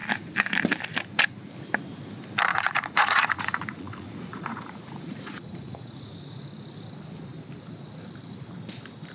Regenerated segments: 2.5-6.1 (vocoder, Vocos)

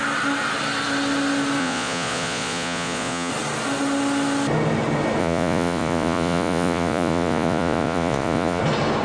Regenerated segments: 1.6-3.3 (vocoder, Vocos); 5.2-8.6

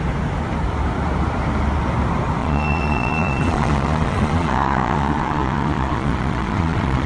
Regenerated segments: 2.4-7.1 (vocoder, Vocos)

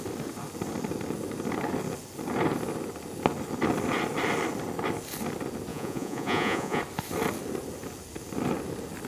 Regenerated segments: 5.7-6.8 (vocoder, Vocos)

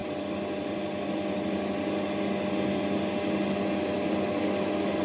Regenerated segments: none

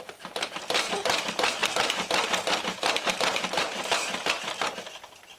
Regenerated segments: none